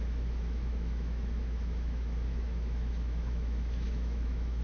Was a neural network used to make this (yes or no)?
yes